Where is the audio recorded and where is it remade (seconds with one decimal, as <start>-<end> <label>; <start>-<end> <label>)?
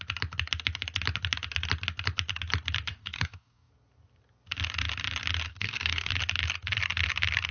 0.0-2.9 recorded; 2.9-3.7 remade; 3.7-5.5 recorded; 5.5-6.1 remade; 6.1-7.5 recorded